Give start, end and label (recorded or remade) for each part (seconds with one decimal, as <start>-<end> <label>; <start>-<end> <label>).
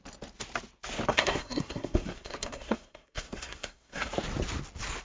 0.0-1.1 recorded; 1.1-4.1 remade; 4.1-5.0 recorded